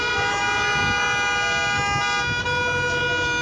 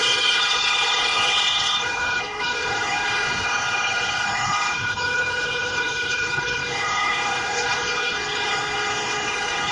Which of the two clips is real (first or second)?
first